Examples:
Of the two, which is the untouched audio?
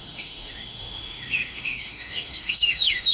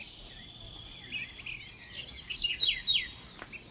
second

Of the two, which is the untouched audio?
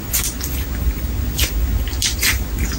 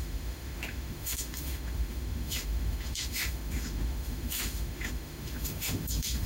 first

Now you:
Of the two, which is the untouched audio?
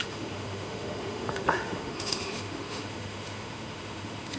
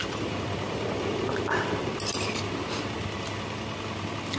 second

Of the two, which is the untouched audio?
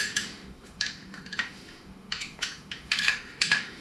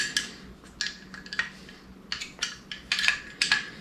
second